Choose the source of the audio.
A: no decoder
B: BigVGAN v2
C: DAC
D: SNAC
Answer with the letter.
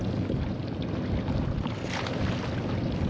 A